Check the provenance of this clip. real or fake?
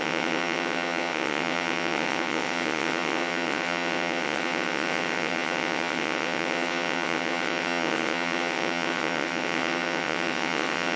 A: fake